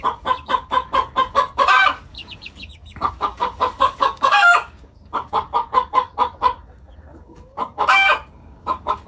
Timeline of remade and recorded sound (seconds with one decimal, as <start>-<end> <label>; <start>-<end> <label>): 0.0-9.1 remade